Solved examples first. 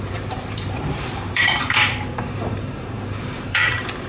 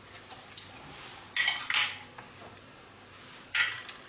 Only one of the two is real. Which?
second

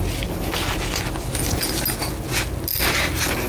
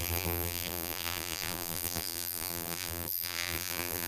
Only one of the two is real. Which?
first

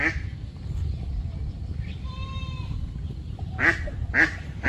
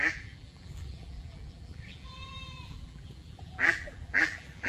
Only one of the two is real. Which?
first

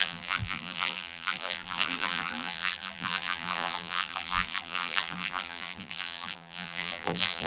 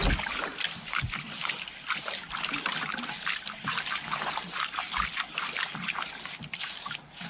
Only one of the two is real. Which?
second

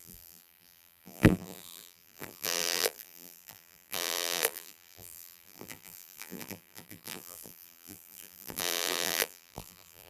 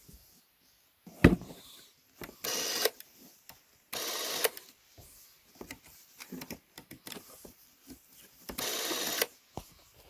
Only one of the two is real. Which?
second